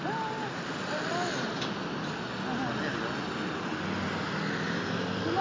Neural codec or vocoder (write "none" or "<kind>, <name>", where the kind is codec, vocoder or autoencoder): none